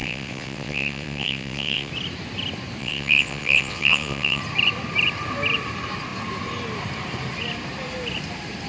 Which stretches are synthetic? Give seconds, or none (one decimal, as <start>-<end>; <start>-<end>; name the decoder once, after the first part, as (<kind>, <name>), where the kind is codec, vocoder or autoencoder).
0.0-1.9 (vocoder, WaveNeXt); 2.8-4.4